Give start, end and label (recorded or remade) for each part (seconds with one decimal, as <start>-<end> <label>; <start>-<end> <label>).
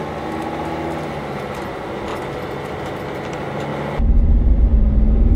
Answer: 0.0-5.4 recorded